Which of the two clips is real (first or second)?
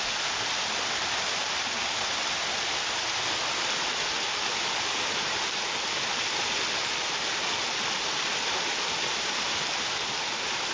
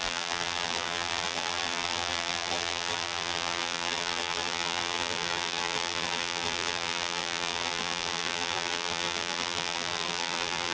first